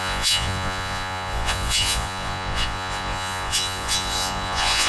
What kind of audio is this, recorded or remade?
remade